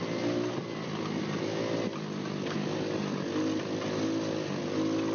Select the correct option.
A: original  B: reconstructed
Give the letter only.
A